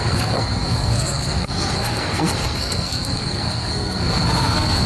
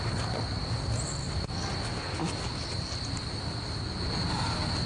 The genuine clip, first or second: second